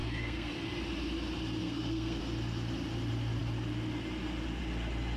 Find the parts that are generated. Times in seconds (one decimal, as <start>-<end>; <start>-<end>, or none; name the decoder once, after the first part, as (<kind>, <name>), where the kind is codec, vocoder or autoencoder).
0.0-0.5 (codec, SNAC); 1.6-2.2